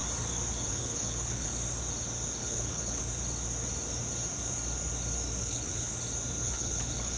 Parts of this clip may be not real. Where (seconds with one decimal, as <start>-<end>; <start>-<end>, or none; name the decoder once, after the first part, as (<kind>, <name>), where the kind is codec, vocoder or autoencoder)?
0.7-1.5 (codec, HILCodec); 2.4-3.0; 5.4-5.9; 6.4-7.2